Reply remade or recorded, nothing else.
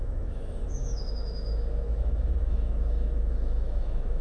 remade